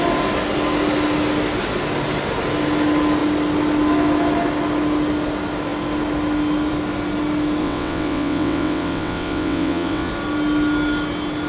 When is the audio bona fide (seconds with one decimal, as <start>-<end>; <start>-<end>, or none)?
0.0-7.6; 10.1-11.5